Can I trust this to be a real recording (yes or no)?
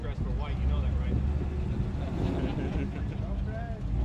yes